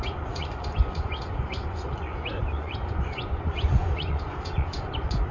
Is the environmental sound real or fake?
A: fake